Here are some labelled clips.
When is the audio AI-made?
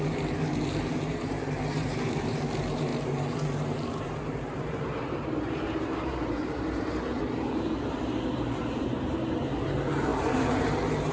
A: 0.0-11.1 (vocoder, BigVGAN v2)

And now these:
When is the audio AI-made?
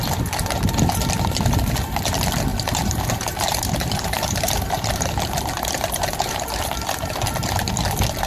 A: 2.5-6.4 (vocoder, BigVGAN v2)